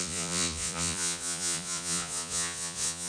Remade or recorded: remade